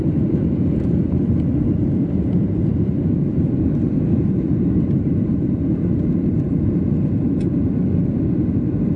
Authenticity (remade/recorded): remade